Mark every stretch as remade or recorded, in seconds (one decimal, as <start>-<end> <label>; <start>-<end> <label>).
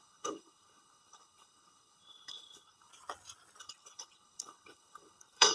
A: 0.0-2.9 remade; 2.9-3.6 recorded; 3.6-5.5 remade